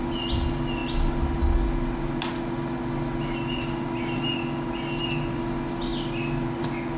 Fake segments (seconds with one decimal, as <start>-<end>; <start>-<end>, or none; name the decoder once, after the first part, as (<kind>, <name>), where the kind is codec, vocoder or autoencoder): none